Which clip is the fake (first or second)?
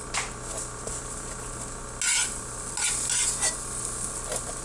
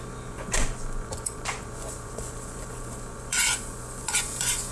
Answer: second